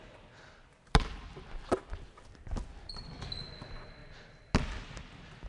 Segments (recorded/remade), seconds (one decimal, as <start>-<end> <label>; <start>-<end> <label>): 0.0-5.5 recorded